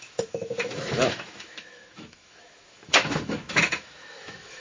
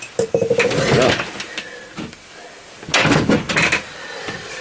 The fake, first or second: first